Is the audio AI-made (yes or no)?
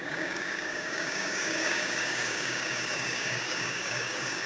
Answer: yes